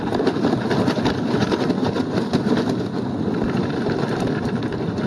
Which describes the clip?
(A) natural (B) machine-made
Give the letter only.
A